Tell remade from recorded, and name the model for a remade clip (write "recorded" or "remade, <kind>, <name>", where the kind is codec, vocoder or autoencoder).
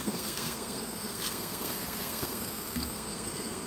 remade, codec, SNAC